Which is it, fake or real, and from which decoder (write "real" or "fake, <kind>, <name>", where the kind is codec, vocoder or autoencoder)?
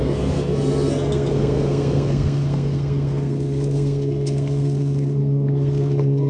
fake, codec, SNAC